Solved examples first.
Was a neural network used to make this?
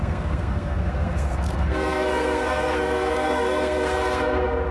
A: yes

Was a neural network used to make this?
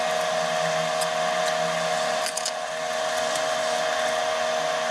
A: no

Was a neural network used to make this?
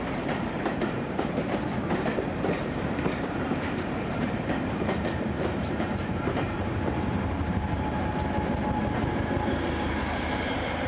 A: yes